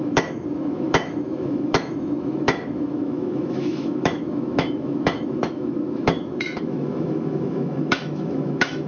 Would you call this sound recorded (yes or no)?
no